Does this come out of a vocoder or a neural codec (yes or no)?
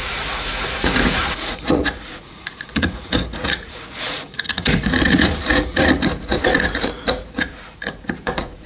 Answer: yes